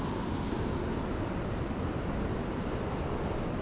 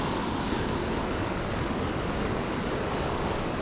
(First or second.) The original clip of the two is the first